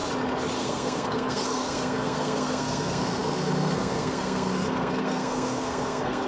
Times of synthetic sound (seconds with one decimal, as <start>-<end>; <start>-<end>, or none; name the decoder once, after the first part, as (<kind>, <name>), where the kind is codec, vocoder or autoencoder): 0.6-6.3 (codec, SNAC)